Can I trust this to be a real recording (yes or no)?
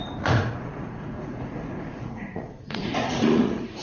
no